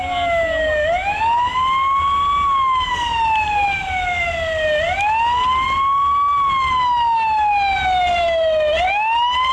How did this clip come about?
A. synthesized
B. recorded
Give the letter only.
B